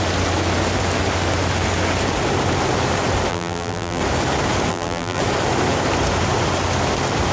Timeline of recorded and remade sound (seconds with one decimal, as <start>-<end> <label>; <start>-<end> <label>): 0.0-3.3 recorded; 3.3-4.0 remade; 4.0-4.7 recorded; 4.7-5.2 remade; 5.2-7.3 recorded